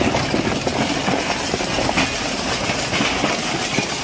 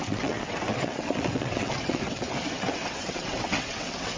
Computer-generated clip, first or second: second